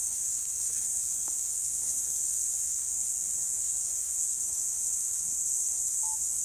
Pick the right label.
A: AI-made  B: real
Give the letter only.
A